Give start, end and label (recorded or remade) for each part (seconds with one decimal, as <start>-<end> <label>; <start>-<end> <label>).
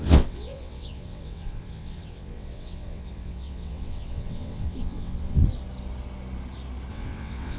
0.0-5.4 remade; 5.4-6.9 recorded; 6.9-7.6 remade